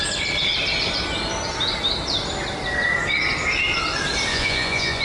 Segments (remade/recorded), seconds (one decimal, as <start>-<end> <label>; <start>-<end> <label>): 0.0-4.3 recorded; 4.3-5.0 remade